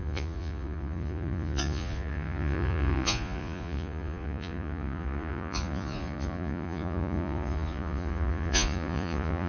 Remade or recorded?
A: remade